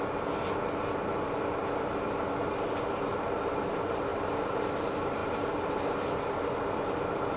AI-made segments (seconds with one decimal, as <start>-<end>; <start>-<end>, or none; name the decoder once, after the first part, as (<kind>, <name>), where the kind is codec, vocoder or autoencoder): none